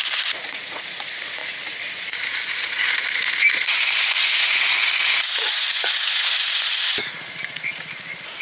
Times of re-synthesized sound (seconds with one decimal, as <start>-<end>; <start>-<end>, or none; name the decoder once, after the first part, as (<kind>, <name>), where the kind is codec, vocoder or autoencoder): 0.0-8.4 (vocoder, Vocos)